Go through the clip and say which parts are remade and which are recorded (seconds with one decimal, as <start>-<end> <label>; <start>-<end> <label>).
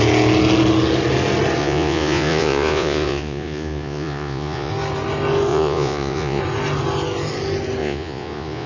0.0-1.6 recorded; 1.6-4.7 remade; 4.7-5.5 recorded; 5.5-6.4 remade; 6.4-7.8 recorded; 7.8-8.7 remade